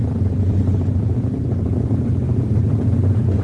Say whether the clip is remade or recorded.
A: remade